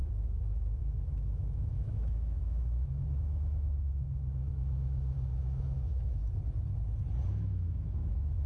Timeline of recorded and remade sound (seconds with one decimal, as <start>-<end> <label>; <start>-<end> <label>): 0.0-6.2 remade; 6.2-7.3 recorded; 7.3-8.5 remade